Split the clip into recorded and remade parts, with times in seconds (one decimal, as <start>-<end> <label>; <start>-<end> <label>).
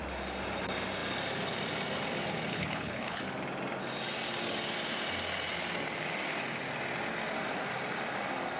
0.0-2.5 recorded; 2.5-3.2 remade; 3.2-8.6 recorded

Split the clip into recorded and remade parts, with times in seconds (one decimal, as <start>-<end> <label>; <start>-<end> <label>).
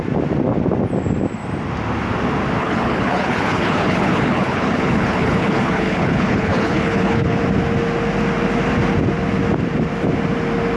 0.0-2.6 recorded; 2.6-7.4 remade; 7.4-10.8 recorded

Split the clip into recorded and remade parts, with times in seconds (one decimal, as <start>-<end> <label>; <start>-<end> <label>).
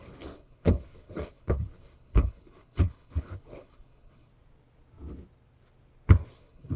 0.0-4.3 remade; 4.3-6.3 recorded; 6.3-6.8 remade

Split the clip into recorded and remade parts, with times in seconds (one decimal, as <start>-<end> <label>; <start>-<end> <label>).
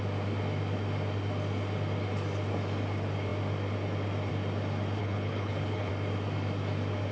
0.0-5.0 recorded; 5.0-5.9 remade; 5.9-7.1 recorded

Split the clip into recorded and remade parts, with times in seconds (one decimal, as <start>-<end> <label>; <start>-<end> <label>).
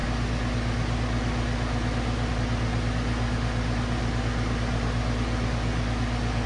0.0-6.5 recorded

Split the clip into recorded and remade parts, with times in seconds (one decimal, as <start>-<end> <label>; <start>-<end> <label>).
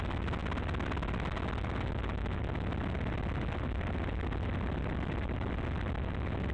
0.0-6.5 recorded